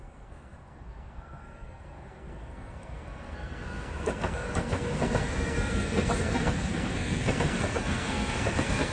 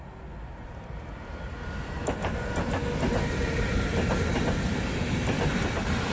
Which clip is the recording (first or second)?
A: second